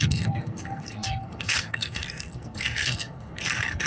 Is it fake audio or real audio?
fake